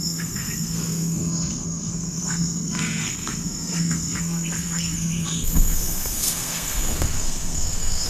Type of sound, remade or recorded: remade